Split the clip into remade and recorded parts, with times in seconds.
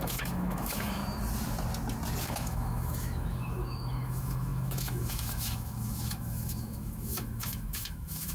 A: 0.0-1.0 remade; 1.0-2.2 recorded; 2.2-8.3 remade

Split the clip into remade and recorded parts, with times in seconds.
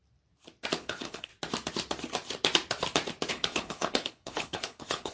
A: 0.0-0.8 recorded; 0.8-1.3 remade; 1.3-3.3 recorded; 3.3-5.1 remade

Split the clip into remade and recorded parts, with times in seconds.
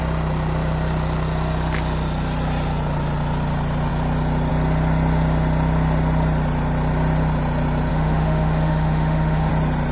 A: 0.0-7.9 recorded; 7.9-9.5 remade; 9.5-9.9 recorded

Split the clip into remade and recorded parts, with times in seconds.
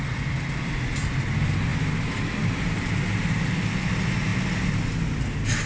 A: 0.0-5.7 recorded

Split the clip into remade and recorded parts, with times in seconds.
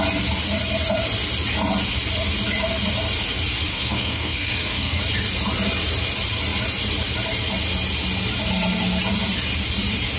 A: 0.0-3.7 recorded; 3.7-5.0 remade; 5.0-10.2 recorded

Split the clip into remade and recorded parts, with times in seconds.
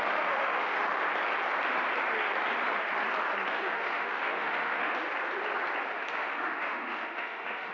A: 0.0-1.0 remade; 1.0-3.5 recorded; 3.5-4.9 remade; 4.9-5.9 recorded; 5.9-7.7 remade